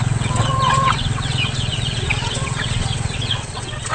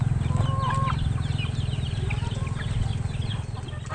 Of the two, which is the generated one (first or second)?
first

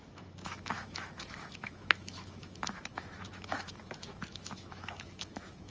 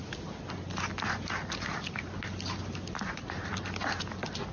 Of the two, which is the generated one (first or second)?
first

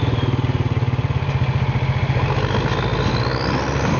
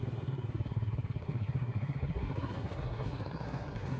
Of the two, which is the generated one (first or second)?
second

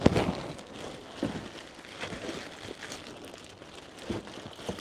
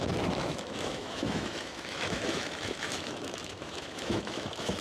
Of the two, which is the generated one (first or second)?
second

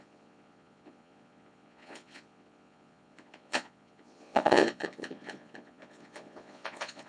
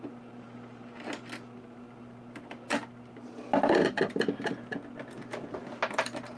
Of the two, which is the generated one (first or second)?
first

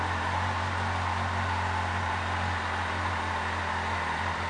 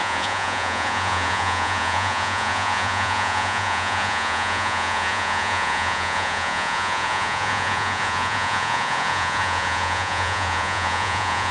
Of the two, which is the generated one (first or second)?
second